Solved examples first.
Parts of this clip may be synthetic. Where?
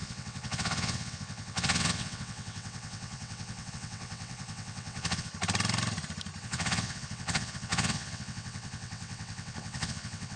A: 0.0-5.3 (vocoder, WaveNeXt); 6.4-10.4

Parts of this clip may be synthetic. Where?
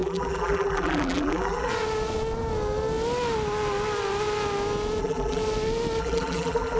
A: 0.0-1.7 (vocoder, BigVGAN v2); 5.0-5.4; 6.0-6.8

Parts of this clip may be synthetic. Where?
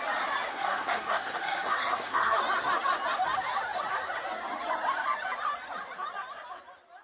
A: 0.5-2.4 (codec, SNAC)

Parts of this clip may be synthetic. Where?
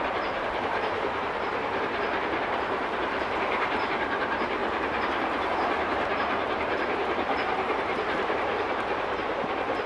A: 0.0-4.6 (vocoder, BigVGAN v2); 5.5-9.9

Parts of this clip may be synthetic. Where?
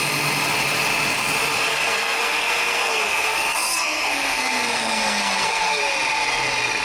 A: 1.7-5.8 (codec, SNAC)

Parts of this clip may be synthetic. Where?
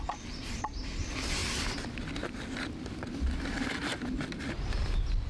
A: none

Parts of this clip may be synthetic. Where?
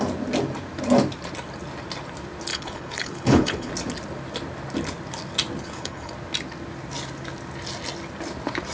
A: 2.5-3.7 (codec, HILCodec); 5.6-6.1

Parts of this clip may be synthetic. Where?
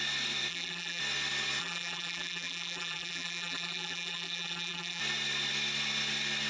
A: 0.5-1.0 (vocoder, BigVGAN v2); 1.6-5.0